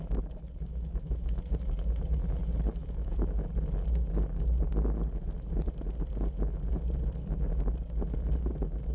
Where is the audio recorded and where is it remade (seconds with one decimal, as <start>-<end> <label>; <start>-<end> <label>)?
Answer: 0.0-0.7 recorded; 0.7-1.4 remade; 1.4-2.8 recorded; 2.8-3.5 remade; 3.5-8.9 recorded